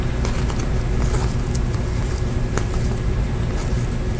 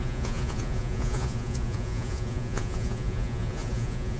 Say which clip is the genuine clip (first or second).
first